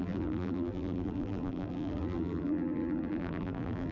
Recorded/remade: remade